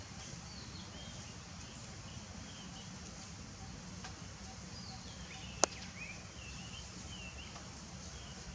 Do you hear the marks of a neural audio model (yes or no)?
no